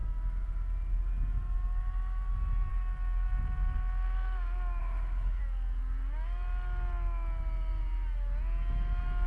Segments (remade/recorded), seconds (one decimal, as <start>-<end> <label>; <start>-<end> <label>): 0.0-4.8 recorded; 4.8-5.4 remade; 5.4-9.3 recorded